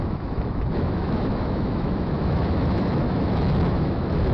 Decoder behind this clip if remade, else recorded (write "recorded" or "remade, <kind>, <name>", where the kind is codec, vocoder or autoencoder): remade, autoencoder, DAC-VAE